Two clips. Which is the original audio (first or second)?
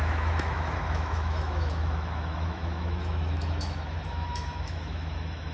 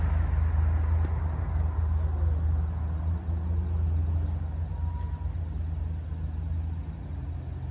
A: second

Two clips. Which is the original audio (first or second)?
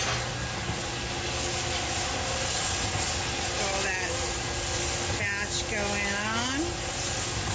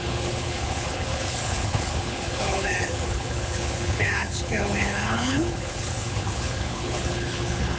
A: first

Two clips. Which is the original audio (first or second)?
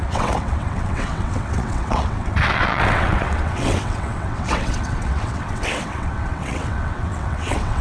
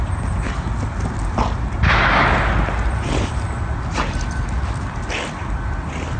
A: second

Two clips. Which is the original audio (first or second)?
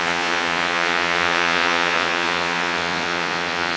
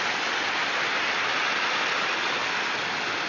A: second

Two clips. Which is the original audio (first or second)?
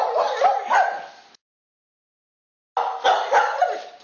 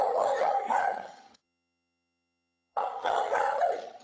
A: first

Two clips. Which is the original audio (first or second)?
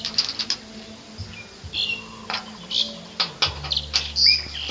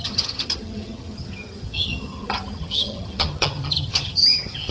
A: first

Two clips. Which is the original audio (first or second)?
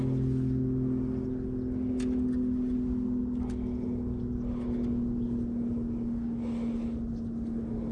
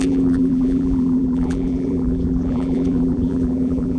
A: first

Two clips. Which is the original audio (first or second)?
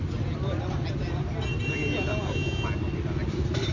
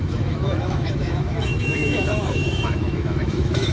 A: first